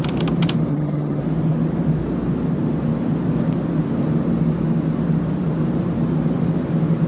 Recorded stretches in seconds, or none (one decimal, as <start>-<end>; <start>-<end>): 0.0-0.7; 1.2-7.1